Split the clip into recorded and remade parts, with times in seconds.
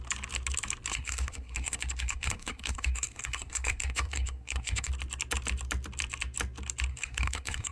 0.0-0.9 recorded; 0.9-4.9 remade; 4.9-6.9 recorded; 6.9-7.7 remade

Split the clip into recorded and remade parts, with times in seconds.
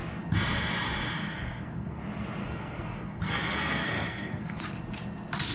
0.0-1.2 recorded; 1.2-2.0 remade; 2.0-2.4 recorded; 2.4-4.6 remade; 4.6-5.5 recorded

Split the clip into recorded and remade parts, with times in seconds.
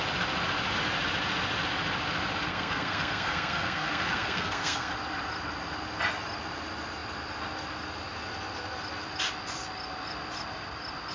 0.0-2.5 recorded; 2.5-4.9 remade; 4.9-11.1 recorded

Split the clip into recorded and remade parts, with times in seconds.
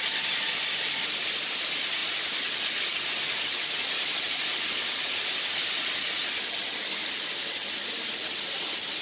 0.0-9.0 recorded